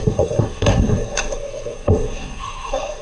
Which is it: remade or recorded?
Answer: remade